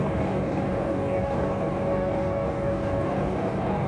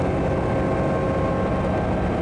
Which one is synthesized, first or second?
first